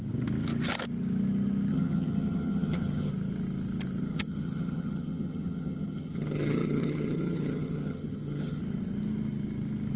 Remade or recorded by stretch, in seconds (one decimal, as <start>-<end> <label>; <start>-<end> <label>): 0.0-1.7 recorded; 1.7-3.1 remade; 3.1-4.0 recorded; 4.0-8.6 remade; 8.6-10.0 recorded